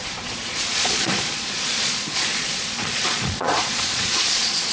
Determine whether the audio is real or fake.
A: fake